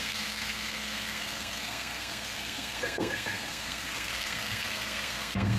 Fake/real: fake